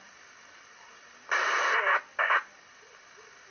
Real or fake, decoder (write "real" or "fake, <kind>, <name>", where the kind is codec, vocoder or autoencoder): real